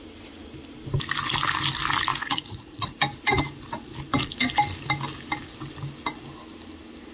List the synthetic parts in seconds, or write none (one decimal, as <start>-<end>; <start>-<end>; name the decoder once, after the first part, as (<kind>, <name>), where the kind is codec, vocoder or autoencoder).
2.1-3.0 (vocoder, Vocos)